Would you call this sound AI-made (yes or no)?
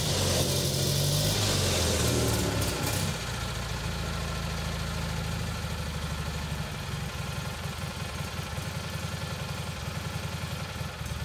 no